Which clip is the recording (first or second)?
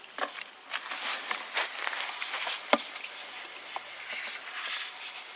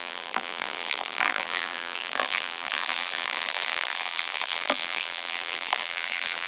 first